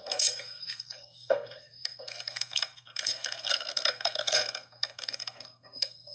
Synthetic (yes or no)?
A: yes